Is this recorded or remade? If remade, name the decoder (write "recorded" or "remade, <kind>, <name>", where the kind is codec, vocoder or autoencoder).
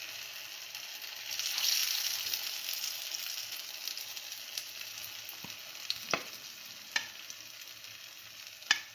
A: recorded